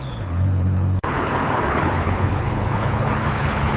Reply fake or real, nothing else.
fake